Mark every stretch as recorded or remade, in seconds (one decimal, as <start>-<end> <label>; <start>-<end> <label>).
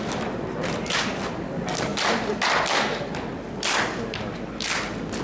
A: 0.0-5.2 recorded